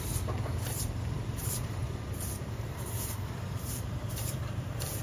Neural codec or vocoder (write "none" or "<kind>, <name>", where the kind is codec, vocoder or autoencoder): vocoder, BigVGAN v2